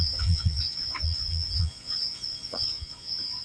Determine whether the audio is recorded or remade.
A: remade